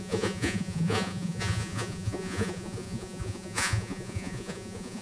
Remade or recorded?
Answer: remade